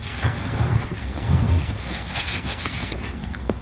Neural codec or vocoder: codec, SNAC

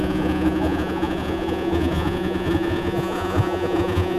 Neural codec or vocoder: vocoder, Vocos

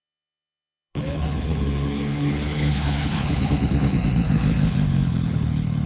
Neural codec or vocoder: codec, HILCodec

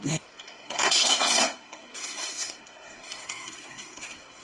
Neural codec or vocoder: codec, SNAC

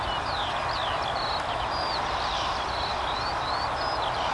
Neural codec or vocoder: none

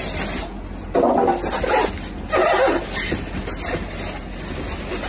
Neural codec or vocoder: none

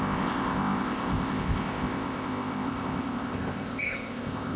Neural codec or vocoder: codec, ZipCodec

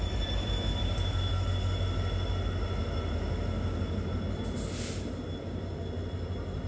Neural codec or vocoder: none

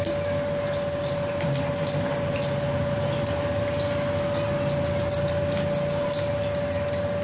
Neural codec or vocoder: none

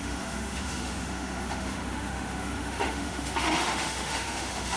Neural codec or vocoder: autoencoder, DAC-VAE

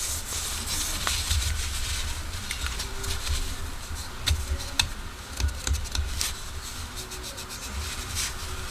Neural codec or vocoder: none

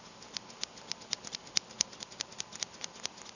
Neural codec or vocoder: none